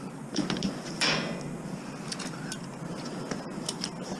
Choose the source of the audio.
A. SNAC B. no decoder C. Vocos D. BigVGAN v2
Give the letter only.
B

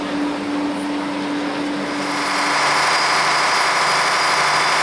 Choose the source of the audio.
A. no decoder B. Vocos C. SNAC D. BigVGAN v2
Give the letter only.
A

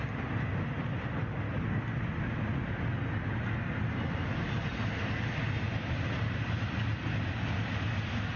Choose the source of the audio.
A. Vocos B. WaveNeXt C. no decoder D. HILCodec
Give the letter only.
C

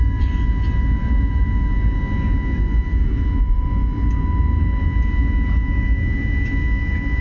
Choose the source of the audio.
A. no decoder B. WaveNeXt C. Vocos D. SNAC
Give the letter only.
A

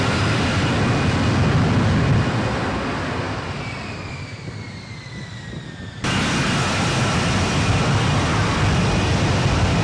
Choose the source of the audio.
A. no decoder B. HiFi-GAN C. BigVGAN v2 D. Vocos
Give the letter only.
A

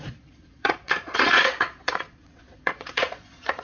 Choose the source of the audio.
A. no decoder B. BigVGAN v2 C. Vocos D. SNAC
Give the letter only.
C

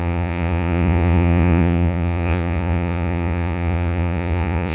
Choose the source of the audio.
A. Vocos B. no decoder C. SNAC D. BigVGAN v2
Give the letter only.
A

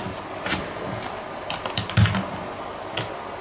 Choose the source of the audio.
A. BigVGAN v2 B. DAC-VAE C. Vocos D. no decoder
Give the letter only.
D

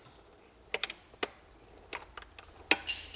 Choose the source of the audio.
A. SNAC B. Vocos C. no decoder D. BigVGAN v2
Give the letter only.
C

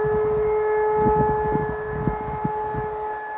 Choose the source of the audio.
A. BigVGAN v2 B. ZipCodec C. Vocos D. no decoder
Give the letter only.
D